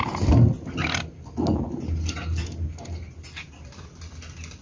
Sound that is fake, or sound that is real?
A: real